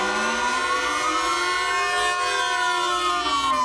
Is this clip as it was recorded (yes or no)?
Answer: yes